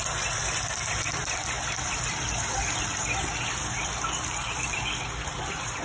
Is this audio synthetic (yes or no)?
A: yes